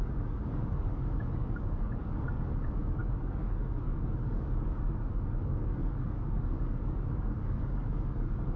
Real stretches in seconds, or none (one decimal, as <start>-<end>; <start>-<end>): none